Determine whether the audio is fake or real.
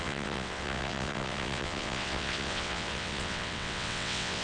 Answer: fake